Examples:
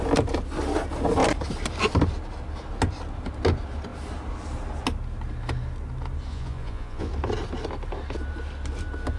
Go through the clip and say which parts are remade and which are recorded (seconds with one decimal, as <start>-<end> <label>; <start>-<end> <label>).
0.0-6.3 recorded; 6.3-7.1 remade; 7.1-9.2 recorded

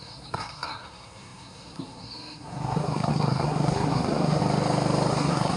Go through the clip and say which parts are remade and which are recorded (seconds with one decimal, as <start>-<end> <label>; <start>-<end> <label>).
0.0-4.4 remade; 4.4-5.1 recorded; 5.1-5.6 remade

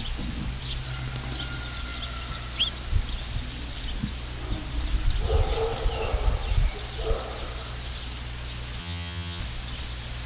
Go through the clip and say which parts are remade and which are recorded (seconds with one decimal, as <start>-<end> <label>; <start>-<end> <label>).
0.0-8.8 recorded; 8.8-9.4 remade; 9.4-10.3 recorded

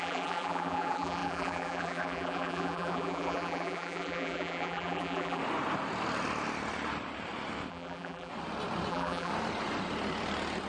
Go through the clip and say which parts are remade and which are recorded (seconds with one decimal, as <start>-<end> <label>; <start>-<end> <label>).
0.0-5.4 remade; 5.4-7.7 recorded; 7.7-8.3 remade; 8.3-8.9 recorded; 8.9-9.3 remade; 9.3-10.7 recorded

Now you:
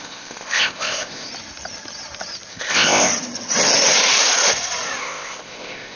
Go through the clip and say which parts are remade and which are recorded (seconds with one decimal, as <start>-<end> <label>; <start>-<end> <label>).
0.0-1.3 remade; 1.3-2.5 recorded; 2.5-3.1 remade; 3.1-5.0 recorded; 5.0-6.0 remade

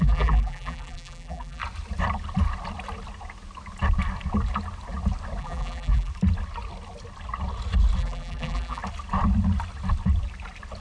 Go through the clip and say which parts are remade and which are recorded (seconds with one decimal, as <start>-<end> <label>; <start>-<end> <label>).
0.0-1.6 remade; 1.6-5.4 recorded; 5.4-6.1 remade; 6.1-8.0 recorded; 8.0-8.8 remade; 8.8-10.8 recorded

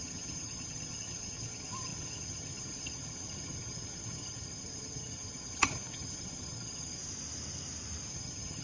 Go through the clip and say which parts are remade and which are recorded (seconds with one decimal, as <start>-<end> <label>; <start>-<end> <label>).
0.0-7.0 remade; 7.0-8.1 recorded; 8.1-8.6 remade